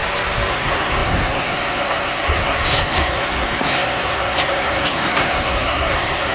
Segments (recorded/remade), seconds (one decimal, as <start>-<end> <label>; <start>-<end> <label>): 0.0-0.5 recorded; 0.5-6.3 remade